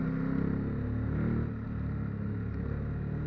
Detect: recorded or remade recorded